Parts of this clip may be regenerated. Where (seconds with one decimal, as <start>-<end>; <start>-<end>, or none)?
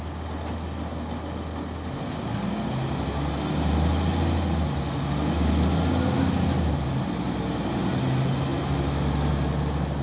none